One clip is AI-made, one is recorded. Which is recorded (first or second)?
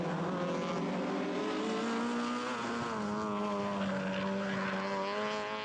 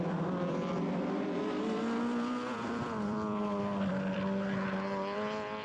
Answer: first